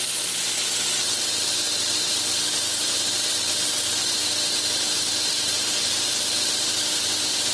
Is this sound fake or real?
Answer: real